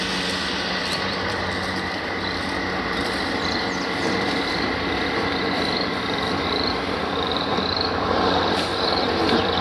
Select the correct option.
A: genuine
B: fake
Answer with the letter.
B